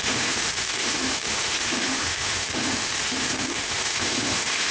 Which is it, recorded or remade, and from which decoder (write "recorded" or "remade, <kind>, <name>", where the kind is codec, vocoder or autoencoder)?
remade, autoencoder, DAC-VAE